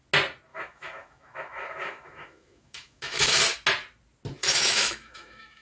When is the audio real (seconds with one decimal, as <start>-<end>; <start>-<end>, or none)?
0.0-0.5; 3.4-4.4